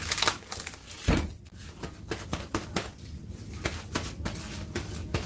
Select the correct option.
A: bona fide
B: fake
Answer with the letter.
A